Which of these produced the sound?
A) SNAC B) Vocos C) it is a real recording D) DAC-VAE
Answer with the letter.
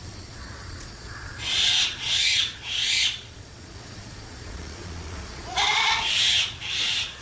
B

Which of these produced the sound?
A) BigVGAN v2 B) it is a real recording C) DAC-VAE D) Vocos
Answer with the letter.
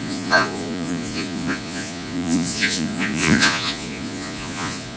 D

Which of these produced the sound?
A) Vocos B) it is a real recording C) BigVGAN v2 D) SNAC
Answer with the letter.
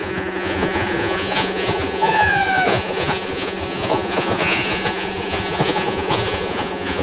A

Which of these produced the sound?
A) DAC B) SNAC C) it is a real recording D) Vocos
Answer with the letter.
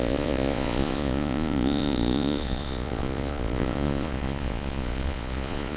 D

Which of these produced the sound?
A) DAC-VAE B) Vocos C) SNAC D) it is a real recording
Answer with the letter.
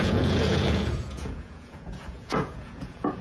B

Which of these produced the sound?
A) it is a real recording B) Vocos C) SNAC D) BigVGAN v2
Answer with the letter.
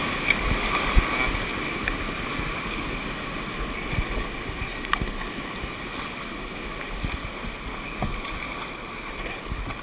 A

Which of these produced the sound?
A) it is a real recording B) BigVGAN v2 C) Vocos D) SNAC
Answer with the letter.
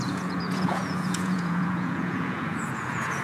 C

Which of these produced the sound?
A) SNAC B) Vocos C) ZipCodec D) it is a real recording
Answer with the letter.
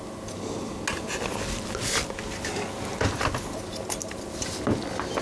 D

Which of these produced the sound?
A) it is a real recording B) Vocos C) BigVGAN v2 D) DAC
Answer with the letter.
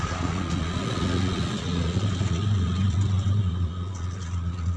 B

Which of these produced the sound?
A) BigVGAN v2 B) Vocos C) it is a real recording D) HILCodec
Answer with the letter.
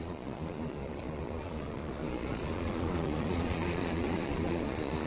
B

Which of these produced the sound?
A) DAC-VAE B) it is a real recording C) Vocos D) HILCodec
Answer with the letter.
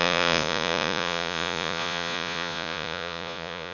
C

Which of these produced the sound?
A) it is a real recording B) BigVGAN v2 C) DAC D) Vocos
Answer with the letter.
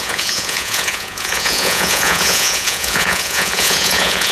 D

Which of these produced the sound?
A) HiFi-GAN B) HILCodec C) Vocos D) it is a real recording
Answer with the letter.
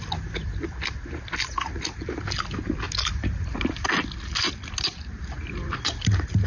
D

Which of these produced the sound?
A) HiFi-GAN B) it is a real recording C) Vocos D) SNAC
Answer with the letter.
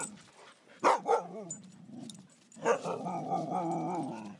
B